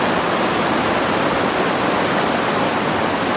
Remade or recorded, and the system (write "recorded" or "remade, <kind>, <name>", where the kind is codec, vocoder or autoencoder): recorded